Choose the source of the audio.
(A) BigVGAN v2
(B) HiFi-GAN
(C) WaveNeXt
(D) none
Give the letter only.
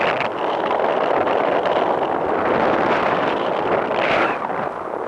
D